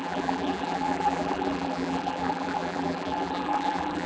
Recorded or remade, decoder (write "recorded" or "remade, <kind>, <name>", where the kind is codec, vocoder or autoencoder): remade, vocoder, BigVGAN v2